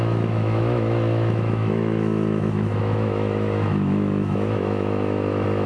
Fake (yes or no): yes